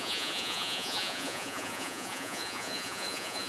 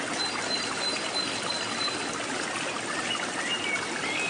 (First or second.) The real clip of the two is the second